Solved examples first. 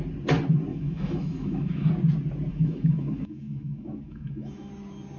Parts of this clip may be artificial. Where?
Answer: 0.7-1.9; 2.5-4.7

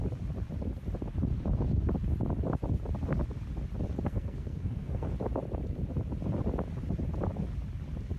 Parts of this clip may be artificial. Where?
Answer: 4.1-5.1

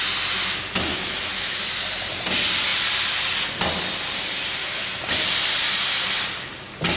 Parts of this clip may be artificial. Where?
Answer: 0.9-1.6; 4.6-5.1

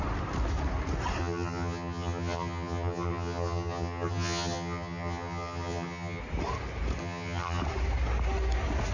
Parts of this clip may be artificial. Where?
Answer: 1.2-6.2; 7.0-7.6

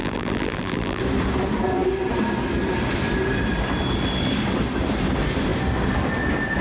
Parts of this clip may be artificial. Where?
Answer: 0.0-1.0

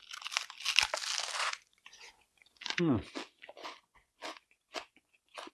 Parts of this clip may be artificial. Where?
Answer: 1.4-2.8; 3.6-5.5

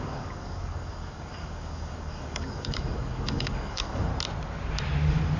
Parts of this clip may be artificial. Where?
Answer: 0.0-4.1

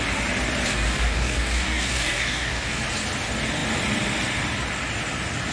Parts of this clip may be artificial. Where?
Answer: 0.7-2.8